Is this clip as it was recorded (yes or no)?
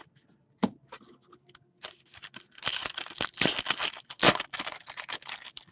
yes